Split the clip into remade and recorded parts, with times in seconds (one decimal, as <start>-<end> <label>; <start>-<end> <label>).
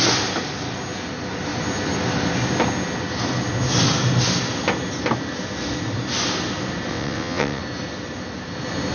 0.0-6.9 recorded; 6.9-7.6 remade; 7.6-8.9 recorded